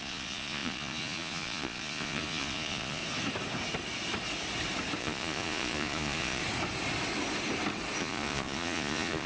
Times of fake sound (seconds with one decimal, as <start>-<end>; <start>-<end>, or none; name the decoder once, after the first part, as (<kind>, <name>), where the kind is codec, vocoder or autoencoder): 0.0-3.0 (vocoder, Vocos); 5.0-6.4; 8.0-9.3